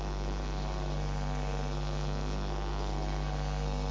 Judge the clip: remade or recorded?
remade